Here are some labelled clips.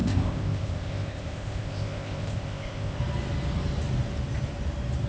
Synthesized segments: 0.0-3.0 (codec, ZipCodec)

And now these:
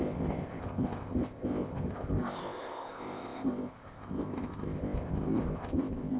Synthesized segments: 0.0-6.2 (codec, ZipCodec)

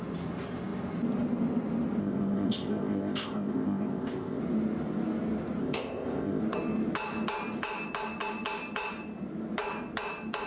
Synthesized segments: 2.0-4.4 (codec, ZipCodec); 5.6-6.4

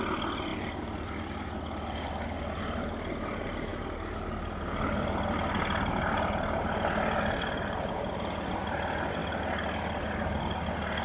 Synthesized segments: none

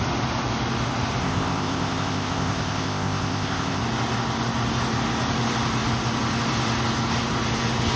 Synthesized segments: 1.2-3.8 (codec, ZipCodec)

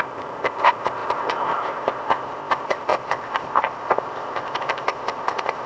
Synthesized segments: 0.0-5.7 (codec, ZipCodec)

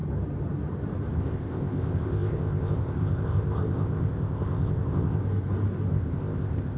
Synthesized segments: 1.1-5.2 (codec, ZipCodec); 5.9-6.8